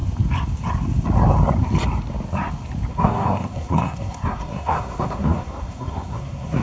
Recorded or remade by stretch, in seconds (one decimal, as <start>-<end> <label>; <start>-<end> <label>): 0.0-2.9 recorded; 2.9-6.6 remade

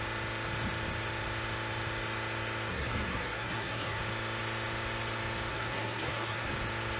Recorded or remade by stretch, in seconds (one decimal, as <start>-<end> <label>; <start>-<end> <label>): 0.0-2.7 recorded; 2.7-4.0 remade; 4.0-5.5 recorded; 5.5-6.5 remade; 6.5-7.0 recorded

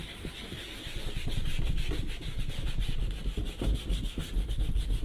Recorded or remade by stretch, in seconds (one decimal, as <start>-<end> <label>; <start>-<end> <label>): 0.0-5.0 recorded